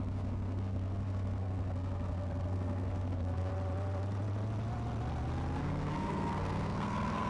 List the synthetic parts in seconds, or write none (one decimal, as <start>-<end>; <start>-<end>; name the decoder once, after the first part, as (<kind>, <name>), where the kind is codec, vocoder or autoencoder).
0.0-3.5 (codec, SNAC); 5.6-7.3